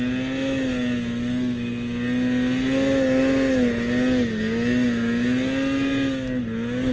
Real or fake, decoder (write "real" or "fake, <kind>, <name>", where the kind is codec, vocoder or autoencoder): real